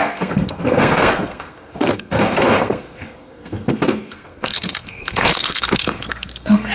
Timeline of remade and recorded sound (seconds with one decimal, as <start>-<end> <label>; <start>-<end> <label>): 0.0-6.7 remade